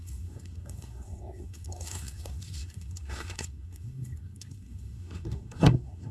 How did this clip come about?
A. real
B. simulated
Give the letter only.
B